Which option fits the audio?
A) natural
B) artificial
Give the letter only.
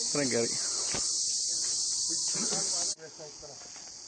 A